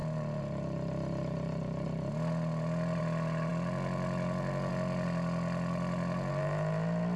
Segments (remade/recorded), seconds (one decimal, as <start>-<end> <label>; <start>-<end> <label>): 0.0-7.2 recorded